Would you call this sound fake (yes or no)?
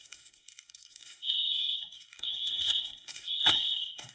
yes